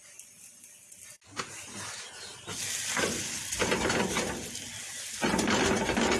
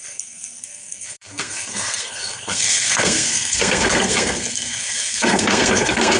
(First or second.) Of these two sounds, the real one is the first